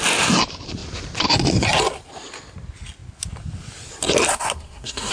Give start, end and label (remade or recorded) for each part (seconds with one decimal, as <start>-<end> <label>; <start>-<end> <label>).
0.0-4.3 recorded; 4.3-5.1 remade